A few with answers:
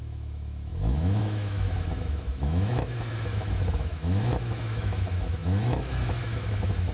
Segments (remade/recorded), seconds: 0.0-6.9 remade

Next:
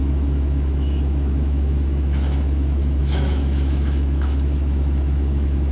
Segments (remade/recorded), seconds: 0.0-5.7 remade

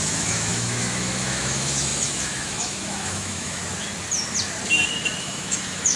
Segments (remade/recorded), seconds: 0.0-3.6 remade; 3.6-5.2 recorded; 5.2-6.0 remade

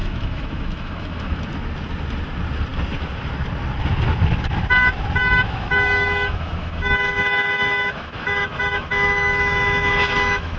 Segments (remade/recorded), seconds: 0.0-1.4 remade; 1.4-5.2 recorded; 5.2-10.6 remade